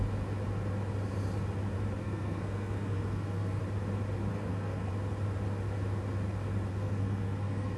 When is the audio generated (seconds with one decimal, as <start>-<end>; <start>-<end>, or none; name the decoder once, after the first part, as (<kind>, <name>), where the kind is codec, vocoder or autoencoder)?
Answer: 2.0-3.6 (codec, SNAC); 4.3-4.9; 6.7-7.8

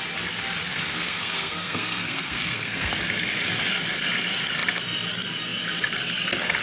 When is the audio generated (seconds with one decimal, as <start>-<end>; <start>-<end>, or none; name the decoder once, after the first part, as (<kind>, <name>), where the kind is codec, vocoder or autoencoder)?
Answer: 0.7-2.9 (codec, SNAC)

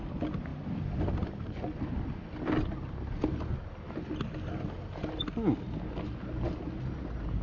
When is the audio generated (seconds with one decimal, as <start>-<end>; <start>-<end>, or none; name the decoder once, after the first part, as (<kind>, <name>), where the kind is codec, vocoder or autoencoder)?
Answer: none

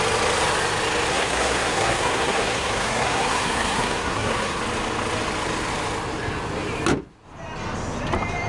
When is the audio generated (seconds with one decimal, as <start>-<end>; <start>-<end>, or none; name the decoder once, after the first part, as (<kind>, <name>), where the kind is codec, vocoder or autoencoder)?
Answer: 1.1-4.6 (codec, SNAC)

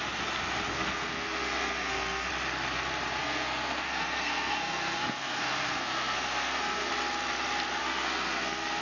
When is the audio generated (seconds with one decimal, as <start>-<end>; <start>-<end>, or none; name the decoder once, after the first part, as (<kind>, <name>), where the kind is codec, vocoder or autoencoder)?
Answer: 0.7-2.3 (codec, SNAC); 3.2-6.9; 7.8-8.8

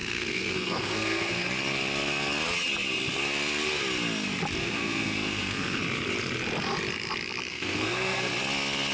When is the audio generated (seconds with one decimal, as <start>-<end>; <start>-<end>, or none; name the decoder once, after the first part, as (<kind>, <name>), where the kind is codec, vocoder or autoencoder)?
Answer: 0.0-1.5 (codec, SNAC); 4.6-5.8; 7.5-8.3